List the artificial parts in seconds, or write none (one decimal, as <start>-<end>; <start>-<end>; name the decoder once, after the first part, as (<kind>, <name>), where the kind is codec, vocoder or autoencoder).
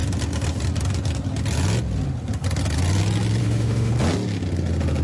3.4-3.9 (autoencoder, DAC-VAE)